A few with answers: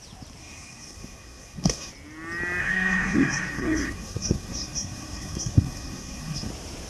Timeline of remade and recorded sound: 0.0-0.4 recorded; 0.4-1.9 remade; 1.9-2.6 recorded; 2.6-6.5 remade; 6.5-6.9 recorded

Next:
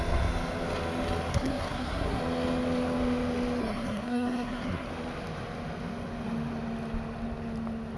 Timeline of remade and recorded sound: 0.0-1.3 recorded; 1.3-2.2 remade; 2.2-3.6 recorded; 3.6-4.9 remade; 4.9-8.0 recorded

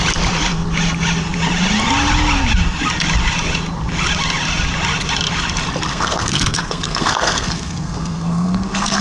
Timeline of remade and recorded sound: 0.0-5.9 recorded; 5.9-9.0 remade

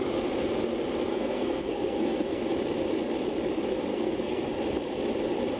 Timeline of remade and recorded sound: 0.0-1.1 recorded; 1.1-2.4 remade; 2.4-3.9 recorded; 3.9-4.5 remade; 4.5-5.6 recorded

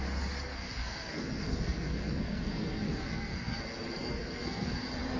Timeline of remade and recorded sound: 0.0-0.5 recorded; 0.5-3.6 remade; 3.6-4.0 recorded; 4.0-4.7 remade; 4.7-5.2 recorded